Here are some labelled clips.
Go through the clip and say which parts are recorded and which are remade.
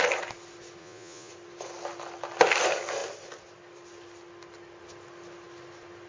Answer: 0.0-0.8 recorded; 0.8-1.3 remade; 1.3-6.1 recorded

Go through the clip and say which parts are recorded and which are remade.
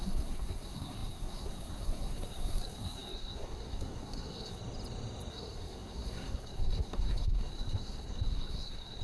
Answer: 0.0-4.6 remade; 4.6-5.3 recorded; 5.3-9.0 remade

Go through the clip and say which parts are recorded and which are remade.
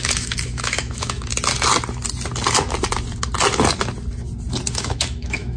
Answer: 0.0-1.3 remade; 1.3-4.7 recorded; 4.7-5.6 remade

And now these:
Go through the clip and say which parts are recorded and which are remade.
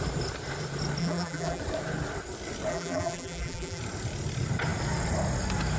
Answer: 0.0-1.0 recorded; 1.0-1.6 remade; 1.6-2.7 recorded; 2.7-3.8 remade; 3.8-5.8 recorded